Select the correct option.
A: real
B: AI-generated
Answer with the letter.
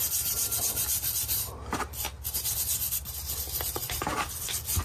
A